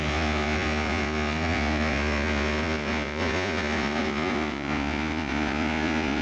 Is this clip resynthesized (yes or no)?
yes